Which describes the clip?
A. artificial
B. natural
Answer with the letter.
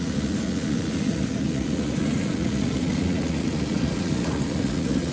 A